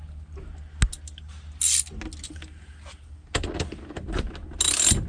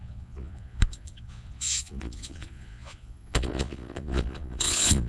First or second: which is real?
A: first